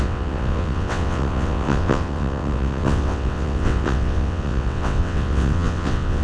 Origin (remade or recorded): remade